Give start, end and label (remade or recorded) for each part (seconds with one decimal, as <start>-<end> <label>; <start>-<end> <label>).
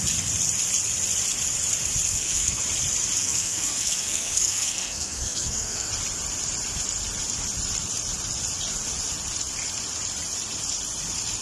0.0-2.1 recorded; 2.1-2.6 remade; 2.6-3.2 recorded; 3.2-5.9 remade; 5.9-11.4 recorded